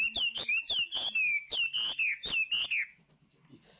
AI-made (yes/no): no